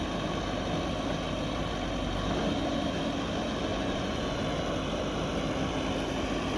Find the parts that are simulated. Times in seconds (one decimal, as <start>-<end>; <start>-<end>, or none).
3.7-4.4